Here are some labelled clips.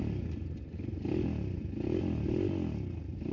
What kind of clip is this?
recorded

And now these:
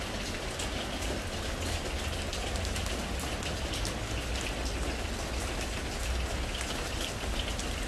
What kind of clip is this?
recorded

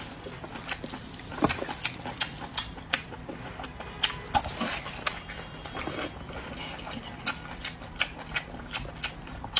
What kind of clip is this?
recorded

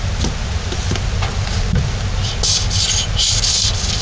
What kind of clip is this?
recorded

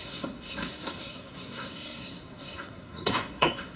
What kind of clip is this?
remade